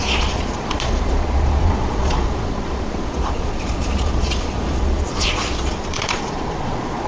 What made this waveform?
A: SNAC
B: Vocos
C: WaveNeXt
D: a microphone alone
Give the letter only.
B